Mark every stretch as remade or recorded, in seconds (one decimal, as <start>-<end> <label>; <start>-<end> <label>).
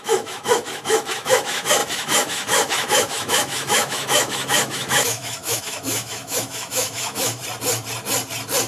0.0-7.4 remade; 7.4-8.7 recorded